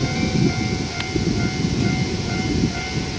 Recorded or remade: recorded